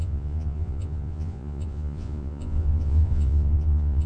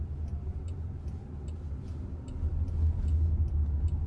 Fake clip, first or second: first